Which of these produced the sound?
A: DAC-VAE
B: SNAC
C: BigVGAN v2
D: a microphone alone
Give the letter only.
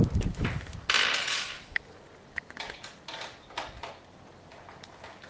D